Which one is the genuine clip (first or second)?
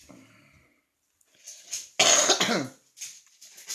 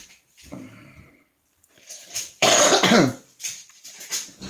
first